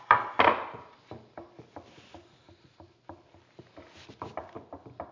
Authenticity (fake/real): real